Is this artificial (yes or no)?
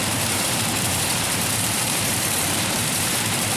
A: yes